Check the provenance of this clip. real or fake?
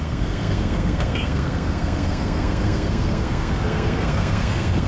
fake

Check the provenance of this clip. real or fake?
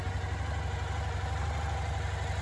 real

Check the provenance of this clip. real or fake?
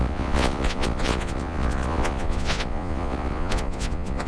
fake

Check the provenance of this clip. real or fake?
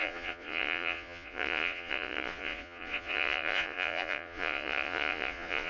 fake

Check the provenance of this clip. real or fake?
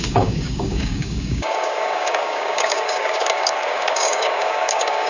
fake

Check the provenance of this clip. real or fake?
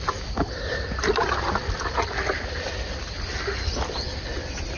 real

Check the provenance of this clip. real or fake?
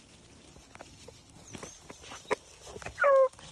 real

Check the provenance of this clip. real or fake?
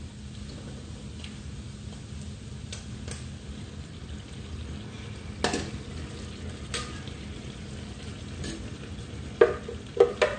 real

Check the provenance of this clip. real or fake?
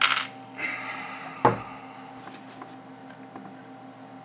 real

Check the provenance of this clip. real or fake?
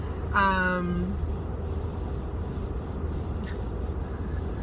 real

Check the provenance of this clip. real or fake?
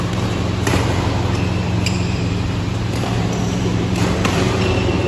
fake